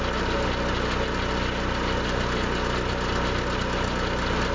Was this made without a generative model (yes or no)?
yes